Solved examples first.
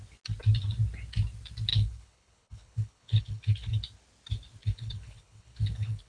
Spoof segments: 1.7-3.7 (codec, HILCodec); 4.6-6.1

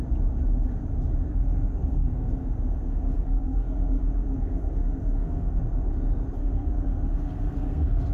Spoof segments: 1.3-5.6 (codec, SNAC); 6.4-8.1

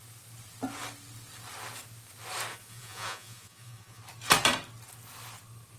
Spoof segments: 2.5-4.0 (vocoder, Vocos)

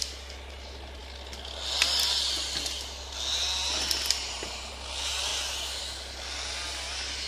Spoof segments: none

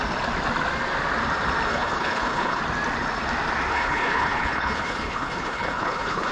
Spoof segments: 1.7-2.6 (codec, HILCodec); 3.7-6.3

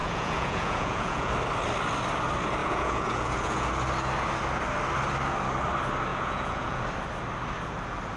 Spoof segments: 0.0-1.3 (vocoder, Vocos); 2.6-3.7; 6.1-6.8

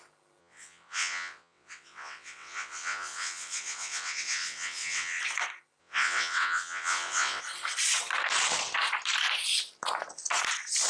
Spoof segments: 0.4-5.2 (vocoder, WaveNeXt); 5.8-7.4

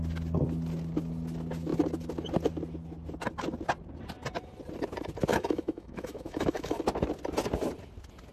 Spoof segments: 5.3-6.8 (autoencoder, DAC-VAE)